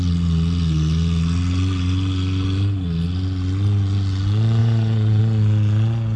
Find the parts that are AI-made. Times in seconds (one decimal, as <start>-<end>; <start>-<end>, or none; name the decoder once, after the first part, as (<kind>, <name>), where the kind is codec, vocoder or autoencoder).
4.6-5.2 (vocoder, Vocos)